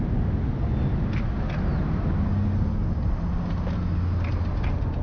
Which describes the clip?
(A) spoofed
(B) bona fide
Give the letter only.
B